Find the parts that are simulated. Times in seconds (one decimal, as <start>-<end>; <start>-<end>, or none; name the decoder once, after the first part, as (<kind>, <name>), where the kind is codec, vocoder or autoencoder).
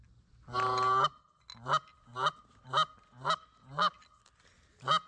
none